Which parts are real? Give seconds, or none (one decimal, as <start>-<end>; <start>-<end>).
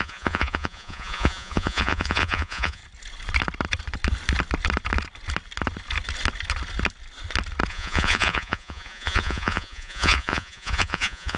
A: 2.8-7.7